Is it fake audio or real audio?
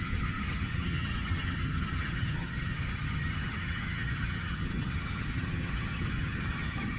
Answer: fake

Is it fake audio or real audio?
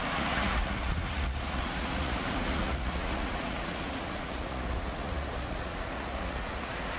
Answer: fake